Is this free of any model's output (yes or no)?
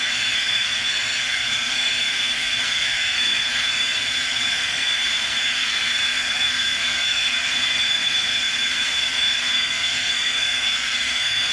no